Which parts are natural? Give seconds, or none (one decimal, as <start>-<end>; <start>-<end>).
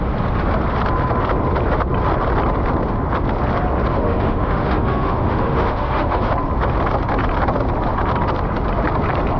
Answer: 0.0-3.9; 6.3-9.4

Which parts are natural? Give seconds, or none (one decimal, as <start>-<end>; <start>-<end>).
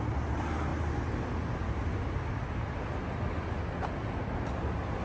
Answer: 0.0-5.0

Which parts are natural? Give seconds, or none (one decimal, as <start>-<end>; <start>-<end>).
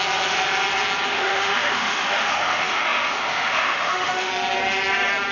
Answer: 0.0-1.1; 4.3-5.3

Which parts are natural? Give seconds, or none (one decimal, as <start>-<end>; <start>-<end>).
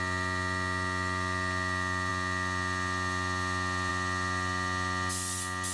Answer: 0.0-5.7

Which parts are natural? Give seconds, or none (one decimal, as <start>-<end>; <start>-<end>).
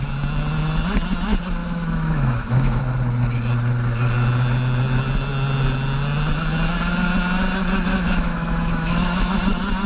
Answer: 0.0-1.6; 2.8-7.9; 9.4-9.9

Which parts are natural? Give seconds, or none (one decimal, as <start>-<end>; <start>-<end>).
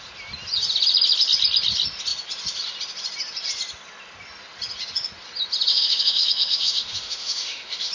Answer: 0.0-5.7